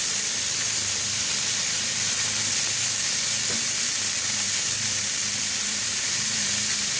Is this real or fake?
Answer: fake